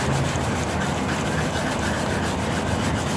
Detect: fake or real real